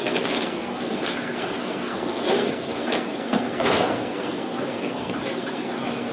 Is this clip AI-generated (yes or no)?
yes